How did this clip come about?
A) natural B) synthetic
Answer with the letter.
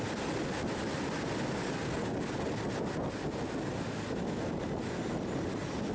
A